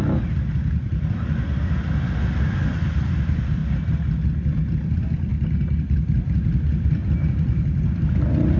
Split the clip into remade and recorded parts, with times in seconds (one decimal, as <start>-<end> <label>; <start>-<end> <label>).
0.0-3.6 remade; 3.6-4.8 recorded; 4.8-5.3 remade; 5.3-5.8 recorded; 5.8-8.6 remade